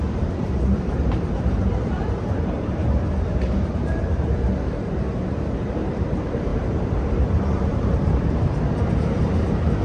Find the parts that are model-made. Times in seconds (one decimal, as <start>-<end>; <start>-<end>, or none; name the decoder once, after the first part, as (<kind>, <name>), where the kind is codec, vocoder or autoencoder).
0.0-9.8 (vocoder, BigVGAN v2)